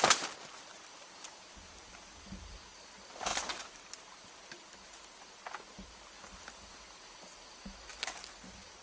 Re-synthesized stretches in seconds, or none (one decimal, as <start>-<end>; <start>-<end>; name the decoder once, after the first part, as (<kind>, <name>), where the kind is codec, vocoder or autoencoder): none